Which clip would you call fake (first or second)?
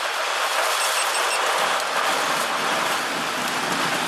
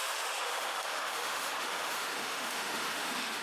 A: second